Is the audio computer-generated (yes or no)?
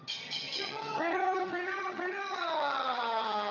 yes